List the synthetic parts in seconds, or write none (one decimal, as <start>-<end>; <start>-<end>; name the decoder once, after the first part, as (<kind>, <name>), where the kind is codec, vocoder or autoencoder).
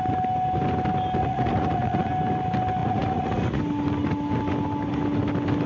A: 1.2-2.1 (vocoder, Vocos); 2.8-3.6